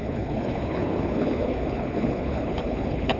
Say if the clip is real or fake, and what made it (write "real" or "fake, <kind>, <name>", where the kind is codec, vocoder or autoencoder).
fake, codec, HILCodec